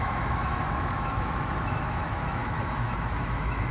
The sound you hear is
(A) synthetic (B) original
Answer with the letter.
A